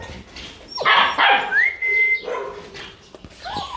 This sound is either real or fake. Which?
real